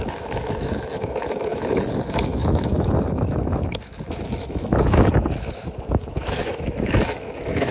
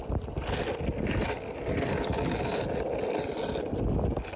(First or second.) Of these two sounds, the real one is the second